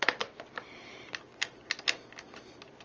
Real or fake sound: real